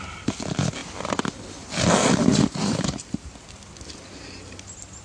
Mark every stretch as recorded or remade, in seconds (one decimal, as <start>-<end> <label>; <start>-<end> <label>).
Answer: 0.0-2.3 recorded; 2.3-3.3 remade; 3.3-5.0 recorded